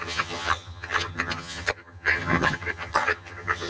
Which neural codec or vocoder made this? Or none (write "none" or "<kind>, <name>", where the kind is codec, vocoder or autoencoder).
vocoder, HiFi-GAN